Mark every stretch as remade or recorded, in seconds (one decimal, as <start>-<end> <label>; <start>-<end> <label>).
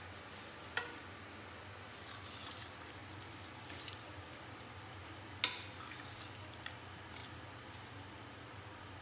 0.0-9.0 recorded